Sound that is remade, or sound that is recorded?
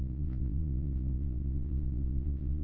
remade